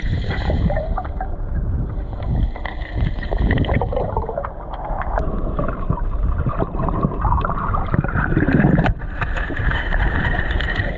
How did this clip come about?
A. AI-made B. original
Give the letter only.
A